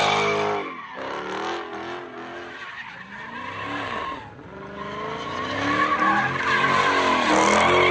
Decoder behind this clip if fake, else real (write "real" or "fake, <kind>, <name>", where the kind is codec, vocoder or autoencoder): real